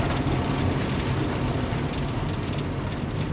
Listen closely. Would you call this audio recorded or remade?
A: recorded